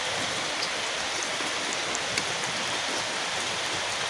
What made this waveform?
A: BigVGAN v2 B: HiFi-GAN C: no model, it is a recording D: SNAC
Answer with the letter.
C